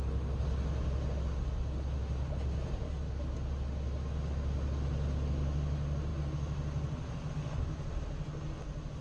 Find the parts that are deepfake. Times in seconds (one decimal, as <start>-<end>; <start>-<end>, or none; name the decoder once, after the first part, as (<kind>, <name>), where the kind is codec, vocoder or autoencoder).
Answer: none